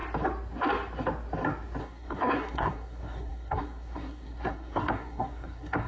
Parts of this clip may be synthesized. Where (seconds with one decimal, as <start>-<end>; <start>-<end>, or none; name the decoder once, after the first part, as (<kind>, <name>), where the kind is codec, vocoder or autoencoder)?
1.8-5.9 (codec, SNAC)